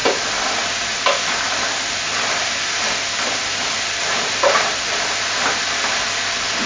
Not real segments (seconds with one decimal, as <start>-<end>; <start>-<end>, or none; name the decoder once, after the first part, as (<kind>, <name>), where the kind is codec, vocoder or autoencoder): none